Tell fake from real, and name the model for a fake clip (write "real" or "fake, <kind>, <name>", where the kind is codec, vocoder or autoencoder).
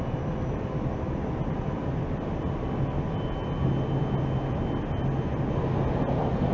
real